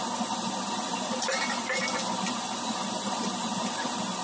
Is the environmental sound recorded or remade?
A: recorded